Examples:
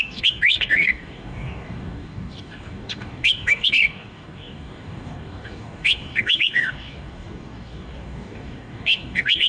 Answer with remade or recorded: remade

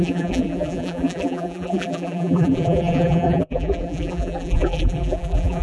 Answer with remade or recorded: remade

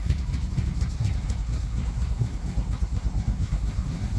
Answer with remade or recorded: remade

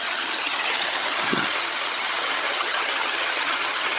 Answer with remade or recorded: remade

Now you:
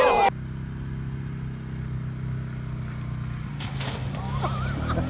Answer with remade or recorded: recorded